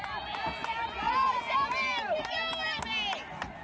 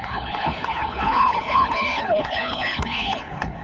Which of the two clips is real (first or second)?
first